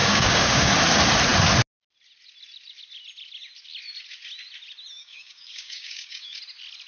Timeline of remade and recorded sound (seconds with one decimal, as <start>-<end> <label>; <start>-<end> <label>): 0.0-0.7 remade; 0.7-5.0 recorded; 5.0-6.4 remade; 6.4-6.9 recorded